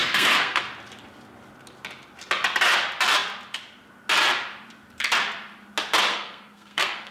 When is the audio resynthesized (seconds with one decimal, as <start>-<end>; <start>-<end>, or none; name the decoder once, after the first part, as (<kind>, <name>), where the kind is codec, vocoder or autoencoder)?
0.0-0.6 (codec, SNAC); 6.1-7.1